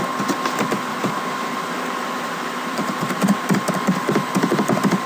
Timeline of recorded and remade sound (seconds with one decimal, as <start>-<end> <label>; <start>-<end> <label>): 0.0-0.9 recorded; 0.9-3.7 remade; 3.7-5.1 recorded